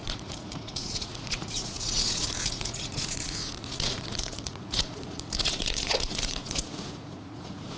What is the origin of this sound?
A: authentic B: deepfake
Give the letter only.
B